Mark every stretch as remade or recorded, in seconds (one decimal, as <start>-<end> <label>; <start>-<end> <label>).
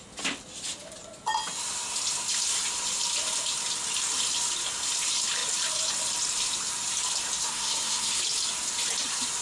0.0-7.4 recorded; 7.4-8.2 remade; 8.2-9.4 recorded